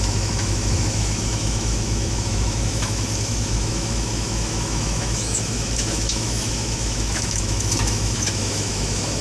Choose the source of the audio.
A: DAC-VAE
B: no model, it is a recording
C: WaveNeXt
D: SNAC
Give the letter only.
A